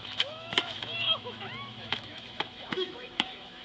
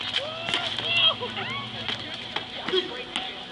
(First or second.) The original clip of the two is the second